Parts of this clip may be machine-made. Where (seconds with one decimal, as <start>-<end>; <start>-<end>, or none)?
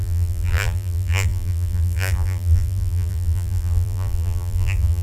0.0-5.0